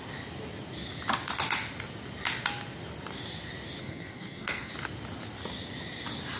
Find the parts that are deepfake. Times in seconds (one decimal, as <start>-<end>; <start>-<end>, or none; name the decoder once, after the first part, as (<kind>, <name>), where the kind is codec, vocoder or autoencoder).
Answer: 3.8-4.7 (codec, SNAC)